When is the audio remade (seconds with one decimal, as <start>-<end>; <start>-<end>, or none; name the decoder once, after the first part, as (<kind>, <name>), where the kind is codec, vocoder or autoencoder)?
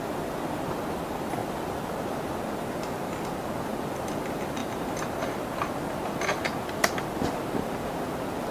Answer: 1.4-2.4 (vocoder, BigVGAN v2)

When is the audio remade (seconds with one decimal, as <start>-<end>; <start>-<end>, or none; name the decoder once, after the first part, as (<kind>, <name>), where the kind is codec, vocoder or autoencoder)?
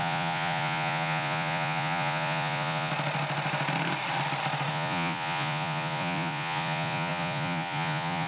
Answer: 0.0-2.9 (vocoder, Vocos); 4.7-8.3